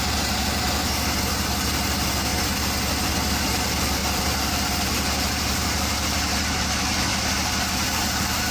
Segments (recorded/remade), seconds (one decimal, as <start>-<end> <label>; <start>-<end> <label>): 0.0-0.8 remade; 0.8-1.6 recorded; 1.6-2.3 remade; 2.3-3.3 recorded; 3.3-8.5 remade